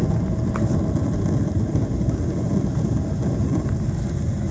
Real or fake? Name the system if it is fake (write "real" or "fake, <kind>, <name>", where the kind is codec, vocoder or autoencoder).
real